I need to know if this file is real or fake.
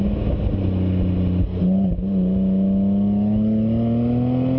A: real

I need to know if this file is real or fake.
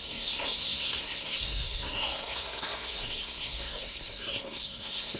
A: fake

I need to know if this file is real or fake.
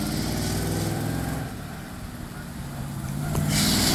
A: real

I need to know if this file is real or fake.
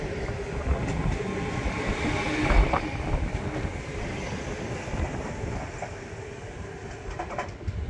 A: real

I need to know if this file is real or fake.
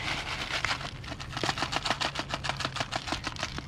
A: real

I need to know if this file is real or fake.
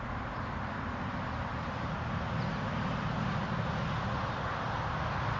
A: real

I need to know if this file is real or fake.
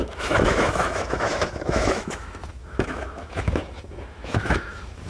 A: fake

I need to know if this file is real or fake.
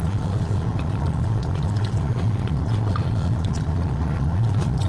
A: fake